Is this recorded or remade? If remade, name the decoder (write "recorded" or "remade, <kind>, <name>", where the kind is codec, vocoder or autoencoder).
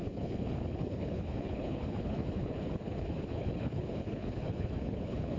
remade, codec, HILCodec